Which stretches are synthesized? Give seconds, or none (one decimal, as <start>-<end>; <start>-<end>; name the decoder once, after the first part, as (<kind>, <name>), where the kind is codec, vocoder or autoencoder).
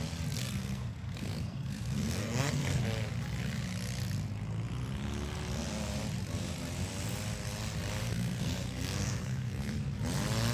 0.4-2.8 (codec, SNAC); 8.0-9.7